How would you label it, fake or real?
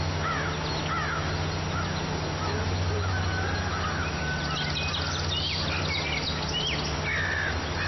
real